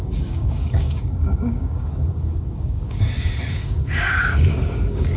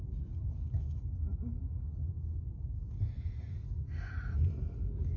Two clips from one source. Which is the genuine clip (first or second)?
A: second